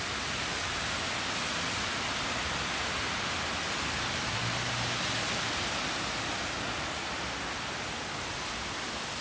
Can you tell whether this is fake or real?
real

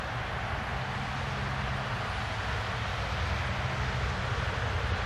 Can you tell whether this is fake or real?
real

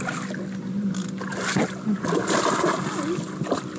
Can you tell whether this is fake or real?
real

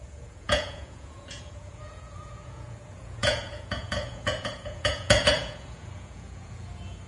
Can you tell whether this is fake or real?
fake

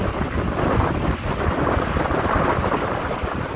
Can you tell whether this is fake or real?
real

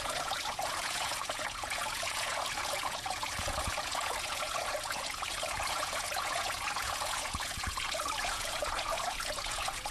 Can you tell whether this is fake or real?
fake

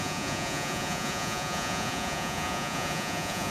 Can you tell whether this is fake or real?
fake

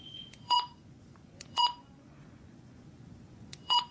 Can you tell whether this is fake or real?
fake